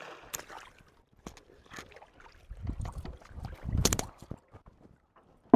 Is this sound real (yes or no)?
yes